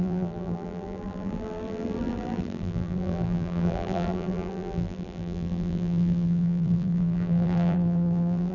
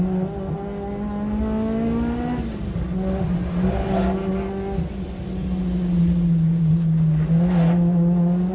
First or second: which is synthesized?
first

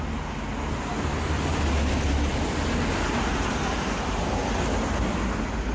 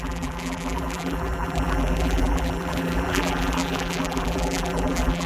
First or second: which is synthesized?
second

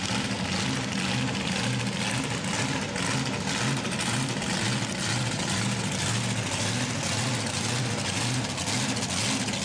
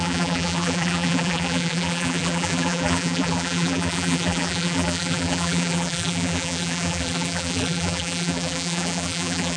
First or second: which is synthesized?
second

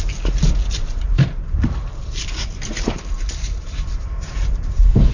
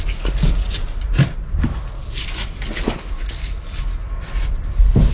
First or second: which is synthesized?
first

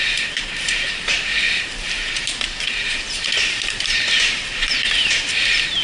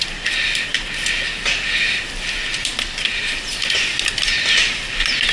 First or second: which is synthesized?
first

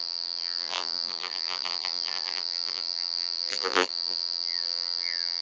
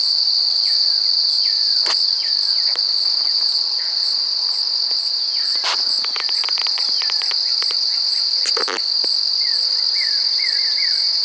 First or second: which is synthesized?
first